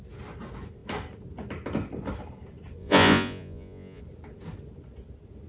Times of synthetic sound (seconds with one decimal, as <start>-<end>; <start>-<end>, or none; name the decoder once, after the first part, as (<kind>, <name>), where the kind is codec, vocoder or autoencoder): 2.8-4.0 (vocoder, Vocos)